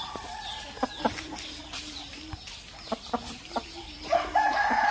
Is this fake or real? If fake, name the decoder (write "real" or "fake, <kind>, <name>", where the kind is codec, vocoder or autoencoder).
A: real